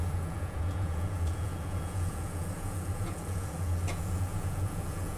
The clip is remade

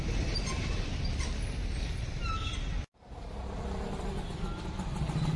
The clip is recorded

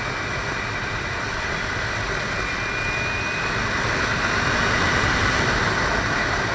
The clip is recorded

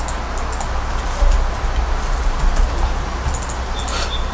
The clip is recorded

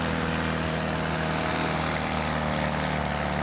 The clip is recorded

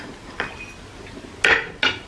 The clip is recorded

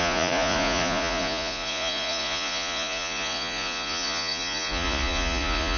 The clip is remade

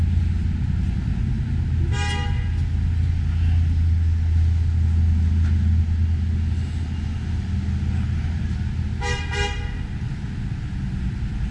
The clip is recorded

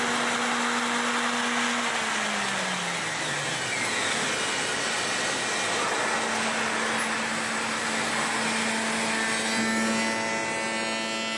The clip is recorded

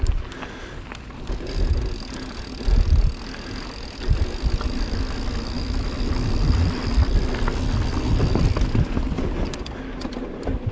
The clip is recorded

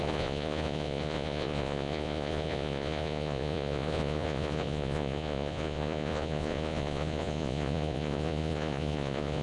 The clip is remade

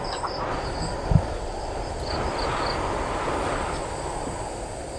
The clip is recorded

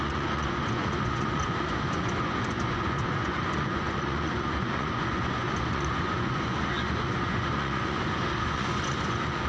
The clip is remade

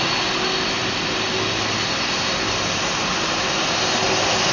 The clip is recorded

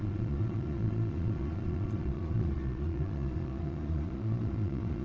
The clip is remade